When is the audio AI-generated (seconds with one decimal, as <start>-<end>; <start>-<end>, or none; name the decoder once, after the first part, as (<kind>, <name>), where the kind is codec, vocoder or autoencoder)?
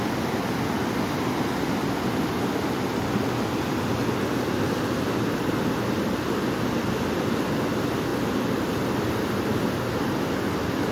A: none